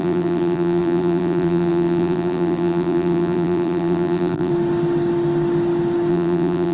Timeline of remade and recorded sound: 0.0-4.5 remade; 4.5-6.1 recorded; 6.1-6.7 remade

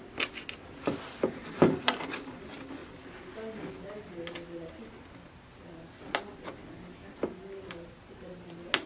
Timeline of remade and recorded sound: 0.0-0.8 recorded; 0.8-2.4 remade; 2.4-8.9 recorded

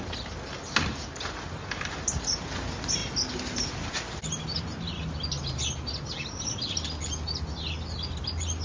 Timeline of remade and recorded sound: 0.0-8.6 recorded